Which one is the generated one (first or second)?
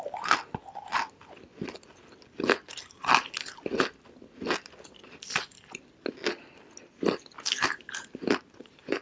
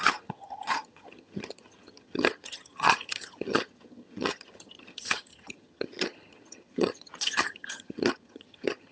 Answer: second